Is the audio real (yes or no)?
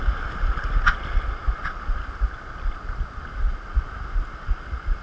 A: yes